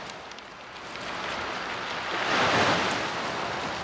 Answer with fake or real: real